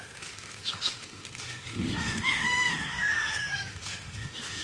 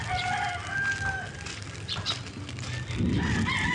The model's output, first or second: first